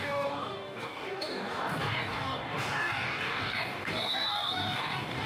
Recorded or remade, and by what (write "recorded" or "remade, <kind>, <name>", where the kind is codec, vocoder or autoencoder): remade, codec, DAC